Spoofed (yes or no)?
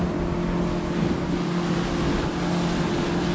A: no